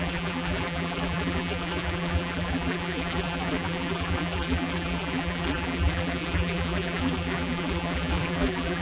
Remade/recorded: remade